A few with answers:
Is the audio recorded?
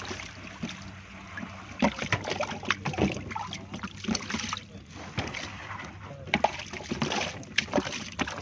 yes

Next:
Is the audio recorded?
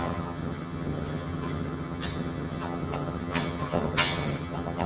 no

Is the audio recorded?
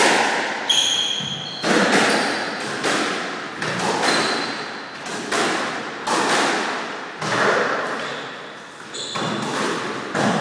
yes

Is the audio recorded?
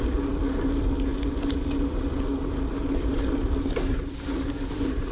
yes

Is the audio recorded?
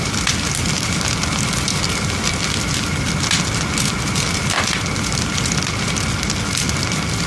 yes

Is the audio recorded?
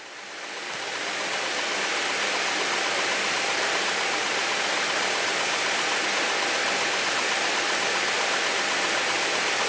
yes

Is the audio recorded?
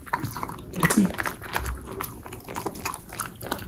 yes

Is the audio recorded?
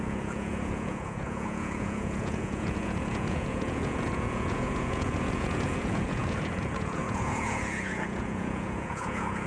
no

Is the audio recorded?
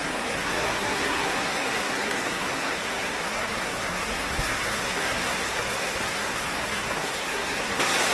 no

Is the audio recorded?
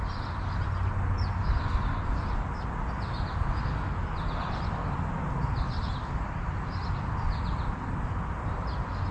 yes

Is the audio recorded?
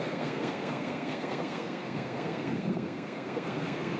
no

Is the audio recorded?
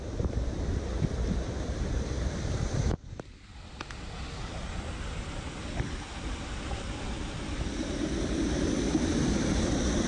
yes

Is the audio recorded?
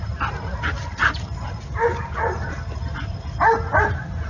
yes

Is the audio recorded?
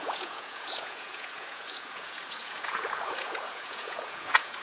no